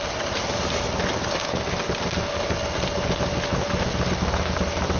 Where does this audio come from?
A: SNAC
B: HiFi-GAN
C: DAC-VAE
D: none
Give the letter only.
D